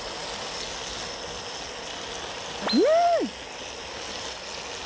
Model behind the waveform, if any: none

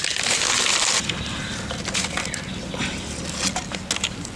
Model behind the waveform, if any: none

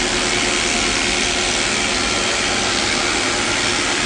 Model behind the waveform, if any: none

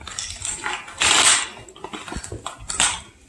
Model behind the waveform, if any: none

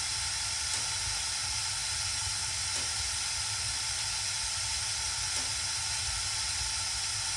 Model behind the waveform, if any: none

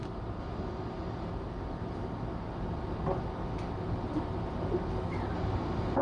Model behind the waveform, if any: none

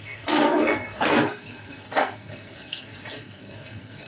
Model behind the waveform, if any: codec, SNAC